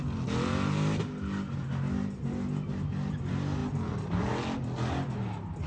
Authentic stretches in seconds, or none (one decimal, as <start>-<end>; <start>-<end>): 0.0-5.7